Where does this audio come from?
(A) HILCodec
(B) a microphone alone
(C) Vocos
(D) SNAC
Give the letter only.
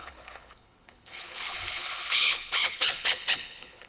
A